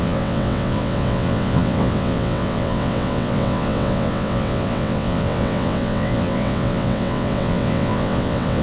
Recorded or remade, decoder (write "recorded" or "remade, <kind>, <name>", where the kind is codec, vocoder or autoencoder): remade, vocoder, WaveNeXt